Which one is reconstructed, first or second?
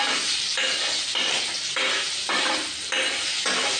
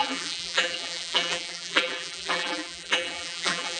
second